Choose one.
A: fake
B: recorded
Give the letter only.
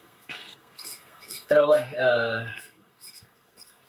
A